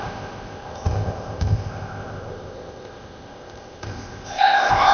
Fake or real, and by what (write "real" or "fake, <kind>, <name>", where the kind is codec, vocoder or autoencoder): fake, codec, ZipCodec